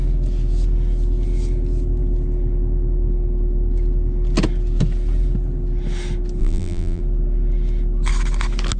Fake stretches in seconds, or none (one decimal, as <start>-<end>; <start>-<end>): 6.4-7.0